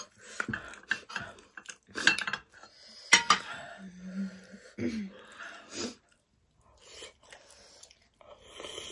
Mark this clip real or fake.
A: real